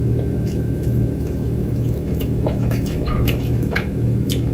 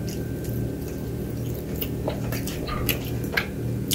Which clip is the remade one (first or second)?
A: first